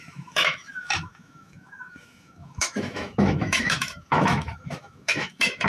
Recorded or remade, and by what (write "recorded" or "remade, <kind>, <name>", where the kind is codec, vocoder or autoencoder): remade, autoencoder, DAC-VAE